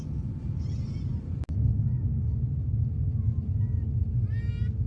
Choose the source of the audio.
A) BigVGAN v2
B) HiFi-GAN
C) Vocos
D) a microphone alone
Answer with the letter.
D